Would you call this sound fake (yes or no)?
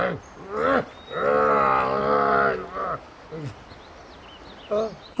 no